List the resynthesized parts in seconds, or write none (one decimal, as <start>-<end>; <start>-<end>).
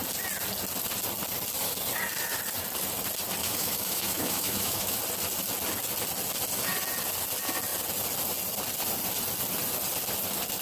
3.4-5.0